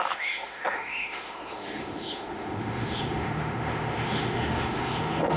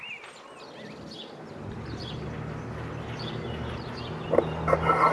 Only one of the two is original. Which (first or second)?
second